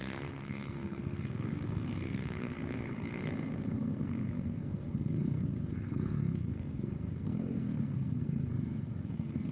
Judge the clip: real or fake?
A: fake